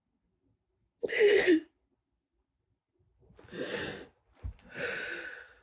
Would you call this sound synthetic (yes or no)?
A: no